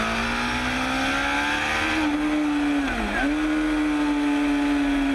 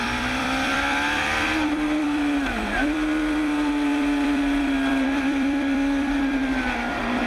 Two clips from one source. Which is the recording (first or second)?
first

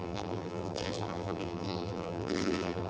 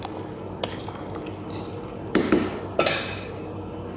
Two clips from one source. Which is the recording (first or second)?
second